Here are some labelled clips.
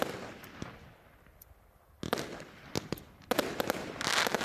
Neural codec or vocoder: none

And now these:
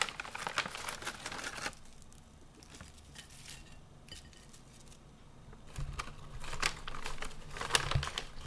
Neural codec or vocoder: none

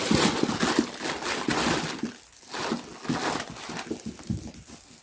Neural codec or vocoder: none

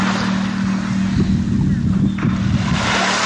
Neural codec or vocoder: none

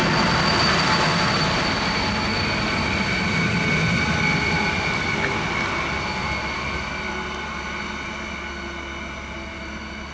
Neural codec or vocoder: none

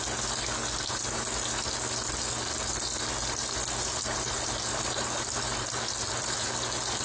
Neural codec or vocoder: none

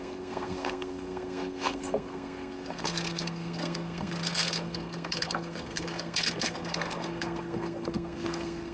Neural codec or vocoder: codec, SNAC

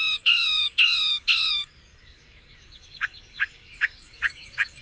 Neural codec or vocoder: codec, DAC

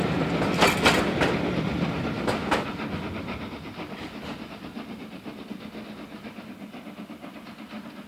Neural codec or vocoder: none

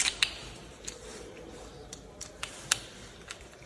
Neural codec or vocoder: vocoder, BigVGAN v2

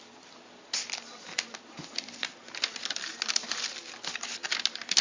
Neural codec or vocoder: none